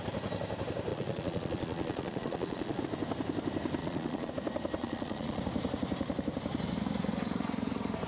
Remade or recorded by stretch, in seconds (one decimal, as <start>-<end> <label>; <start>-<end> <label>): 0.0-0.9 recorded; 0.9-2.8 remade; 2.8-3.8 recorded; 3.8-4.3 remade; 4.3-4.8 recorded; 4.8-5.4 remade; 5.4-8.1 recorded